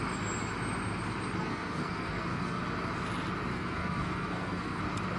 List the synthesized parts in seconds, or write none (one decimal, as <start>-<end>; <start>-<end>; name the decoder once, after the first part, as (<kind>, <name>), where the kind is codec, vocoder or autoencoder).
1.4-2.6 (codec, SNAC); 3.5-4.8